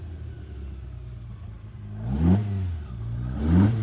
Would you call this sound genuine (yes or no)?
yes